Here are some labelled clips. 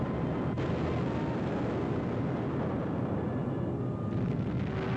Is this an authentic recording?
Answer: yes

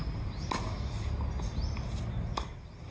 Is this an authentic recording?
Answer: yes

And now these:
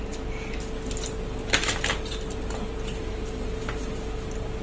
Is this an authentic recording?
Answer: yes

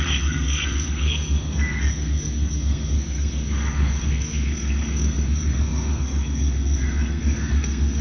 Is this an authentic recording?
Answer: no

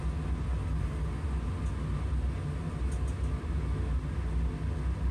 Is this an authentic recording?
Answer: yes